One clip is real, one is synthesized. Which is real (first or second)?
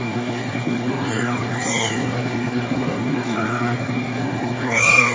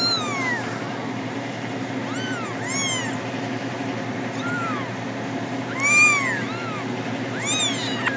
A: second